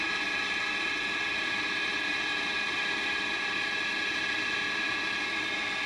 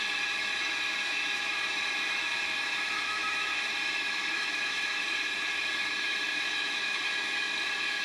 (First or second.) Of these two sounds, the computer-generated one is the second